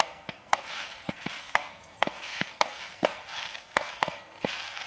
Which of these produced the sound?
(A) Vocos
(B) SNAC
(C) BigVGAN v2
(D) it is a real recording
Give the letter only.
B